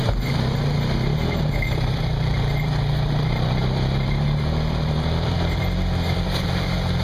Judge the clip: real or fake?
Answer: fake